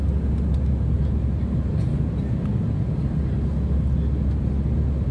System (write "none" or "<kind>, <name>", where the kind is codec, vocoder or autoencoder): none